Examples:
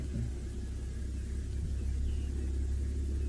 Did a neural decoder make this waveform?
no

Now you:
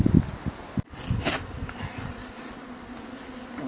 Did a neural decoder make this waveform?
no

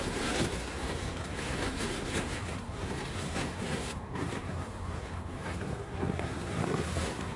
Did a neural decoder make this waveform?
yes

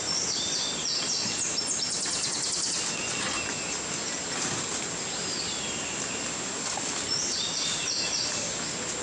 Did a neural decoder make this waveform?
no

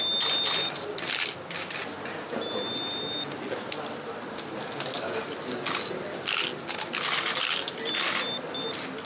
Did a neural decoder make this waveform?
no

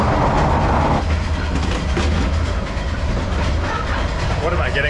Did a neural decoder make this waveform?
no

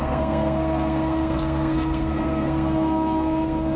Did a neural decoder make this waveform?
yes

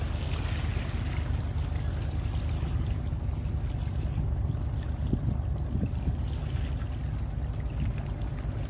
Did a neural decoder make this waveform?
no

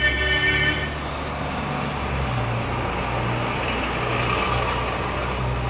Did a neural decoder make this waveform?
no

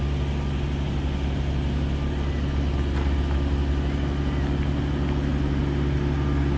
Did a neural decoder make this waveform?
no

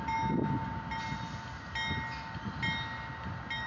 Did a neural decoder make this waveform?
no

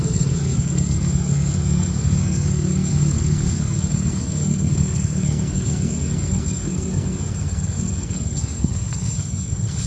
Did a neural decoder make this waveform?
yes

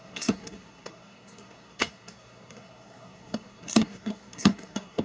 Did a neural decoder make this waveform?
yes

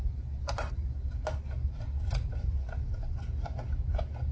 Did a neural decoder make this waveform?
no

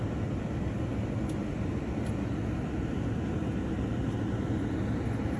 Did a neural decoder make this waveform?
no